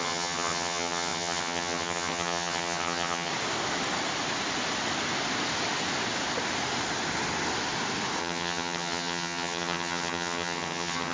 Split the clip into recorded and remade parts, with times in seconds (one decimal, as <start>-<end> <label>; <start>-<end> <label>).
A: 0.0-3.3 remade; 3.3-8.2 recorded; 8.2-11.1 remade